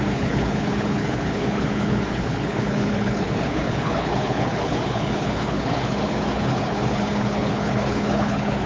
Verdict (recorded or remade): remade